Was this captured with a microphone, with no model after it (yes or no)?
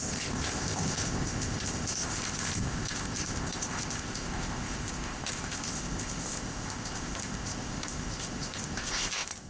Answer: no